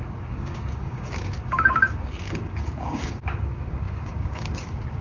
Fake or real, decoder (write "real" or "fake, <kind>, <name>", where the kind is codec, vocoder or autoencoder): fake, codec, DAC